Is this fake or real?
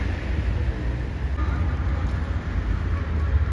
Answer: real